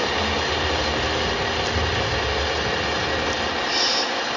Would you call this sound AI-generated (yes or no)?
no